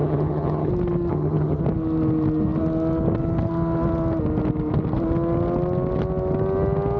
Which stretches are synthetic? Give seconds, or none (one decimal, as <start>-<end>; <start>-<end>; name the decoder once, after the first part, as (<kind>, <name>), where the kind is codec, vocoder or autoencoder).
0.0-0.7 (vocoder, HiFi-GAN); 1.1-1.6